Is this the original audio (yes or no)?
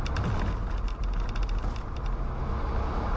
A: yes